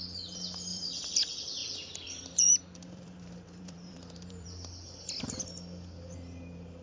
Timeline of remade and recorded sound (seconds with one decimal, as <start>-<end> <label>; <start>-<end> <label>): 0.0-0.7 recorded; 0.7-1.2 remade; 1.2-1.6 recorded; 1.6-5.1 remade; 5.1-6.8 recorded